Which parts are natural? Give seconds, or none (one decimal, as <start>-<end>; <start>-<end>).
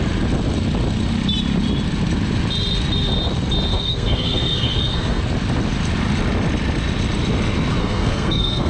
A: 0.0-3.7; 5.2-7.8